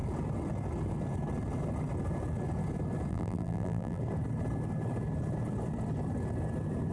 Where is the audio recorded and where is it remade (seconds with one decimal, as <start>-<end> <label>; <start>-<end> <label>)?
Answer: 0.0-3.1 recorded; 3.1-4.0 remade; 4.0-6.9 recorded